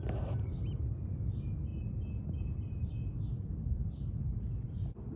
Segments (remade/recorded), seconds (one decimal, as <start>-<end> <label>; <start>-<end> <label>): 0.0-5.2 recorded